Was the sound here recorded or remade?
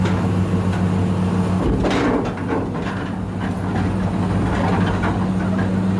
recorded